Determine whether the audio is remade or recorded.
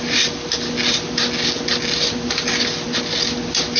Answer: recorded